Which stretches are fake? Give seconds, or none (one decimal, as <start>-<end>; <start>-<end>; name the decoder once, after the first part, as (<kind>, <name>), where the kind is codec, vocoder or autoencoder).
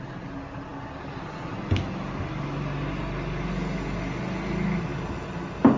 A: none